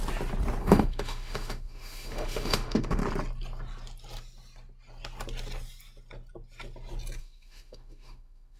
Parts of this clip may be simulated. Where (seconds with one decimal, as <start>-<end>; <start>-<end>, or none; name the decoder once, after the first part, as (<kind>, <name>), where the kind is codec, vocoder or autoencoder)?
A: 0.6-3.0 (autoencoder, DAC-VAE); 7.2-8.6